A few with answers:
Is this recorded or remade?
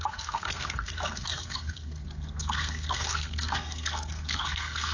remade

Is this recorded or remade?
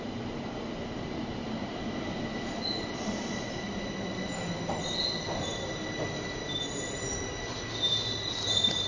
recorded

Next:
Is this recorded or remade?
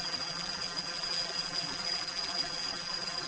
remade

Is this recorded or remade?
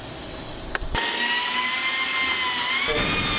recorded